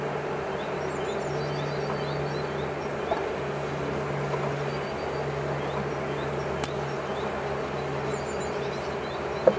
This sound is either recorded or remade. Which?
recorded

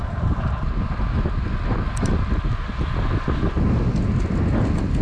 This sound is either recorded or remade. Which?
recorded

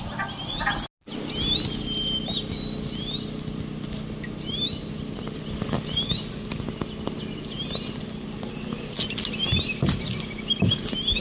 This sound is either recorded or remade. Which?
recorded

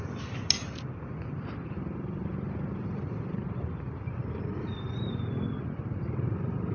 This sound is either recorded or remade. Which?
recorded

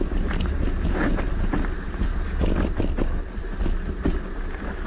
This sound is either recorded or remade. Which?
recorded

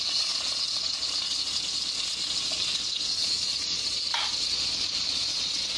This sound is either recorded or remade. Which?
remade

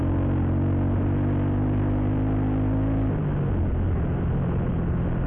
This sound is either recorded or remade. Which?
recorded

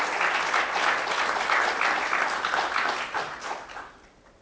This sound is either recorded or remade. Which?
recorded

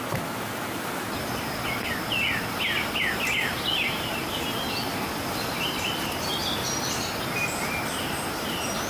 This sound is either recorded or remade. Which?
recorded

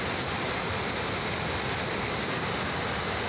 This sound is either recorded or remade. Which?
recorded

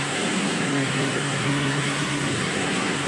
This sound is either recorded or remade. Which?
remade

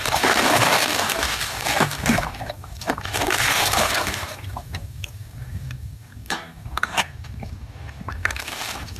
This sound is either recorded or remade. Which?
remade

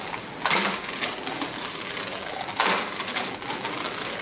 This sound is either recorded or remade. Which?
remade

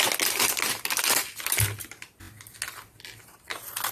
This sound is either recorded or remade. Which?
recorded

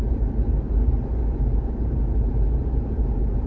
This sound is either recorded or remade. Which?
remade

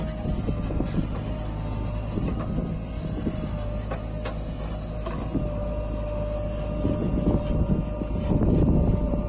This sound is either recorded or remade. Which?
recorded